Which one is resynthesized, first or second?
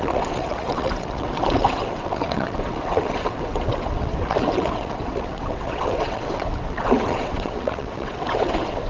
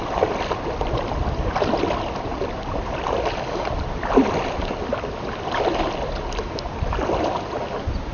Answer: first